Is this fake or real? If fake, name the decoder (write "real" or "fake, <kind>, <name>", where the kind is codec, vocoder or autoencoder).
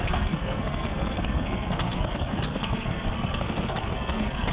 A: fake, codec, SNAC